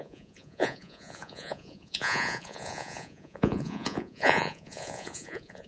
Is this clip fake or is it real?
fake